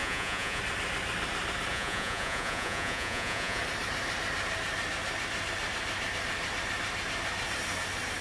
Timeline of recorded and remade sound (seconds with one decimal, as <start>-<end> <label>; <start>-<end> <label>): 0.0-0.6 remade; 0.6-1.7 recorded; 1.7-3.6 remade; 3.6-8.2 recorded